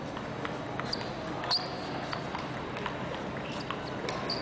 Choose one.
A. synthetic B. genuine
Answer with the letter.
B